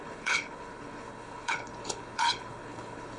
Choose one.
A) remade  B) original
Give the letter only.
A